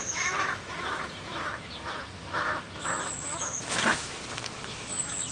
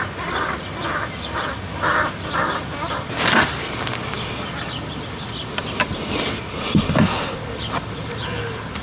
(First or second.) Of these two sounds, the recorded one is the second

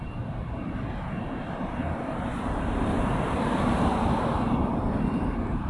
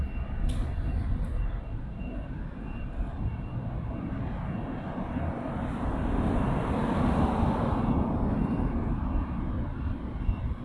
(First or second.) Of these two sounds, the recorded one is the second